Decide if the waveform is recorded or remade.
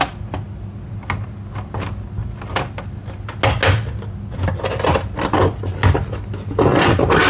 recorded